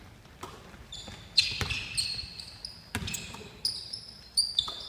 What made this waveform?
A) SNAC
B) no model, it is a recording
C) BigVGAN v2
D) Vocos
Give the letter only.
B